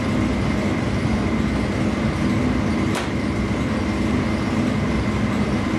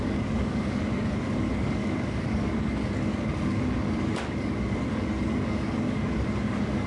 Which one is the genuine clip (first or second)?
first